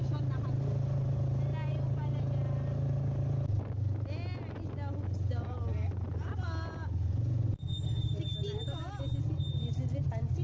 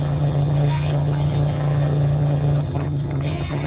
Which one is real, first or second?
first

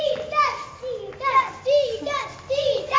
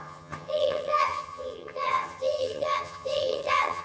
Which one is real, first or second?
first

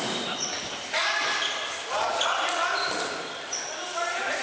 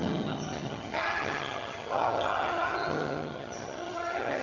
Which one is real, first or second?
first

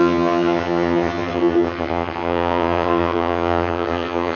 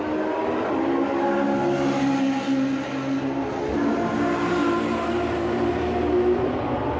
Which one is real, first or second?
second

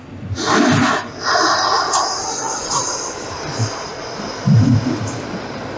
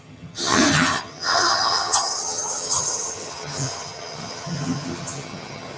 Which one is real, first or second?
first